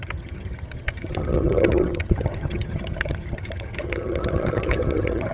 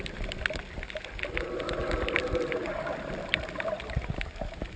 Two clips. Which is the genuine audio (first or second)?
second